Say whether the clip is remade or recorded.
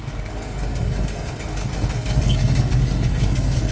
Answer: remade